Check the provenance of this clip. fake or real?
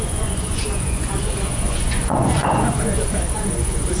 fake